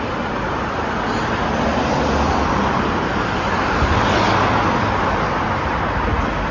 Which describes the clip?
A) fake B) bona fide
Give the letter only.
B